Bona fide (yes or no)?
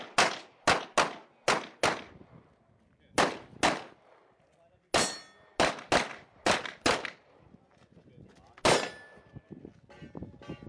yes